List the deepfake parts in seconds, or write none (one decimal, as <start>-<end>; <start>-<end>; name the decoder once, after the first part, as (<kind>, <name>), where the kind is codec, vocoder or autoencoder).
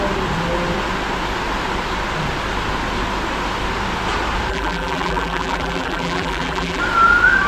4.5-6.8 (vocoder, BigVGAN v2)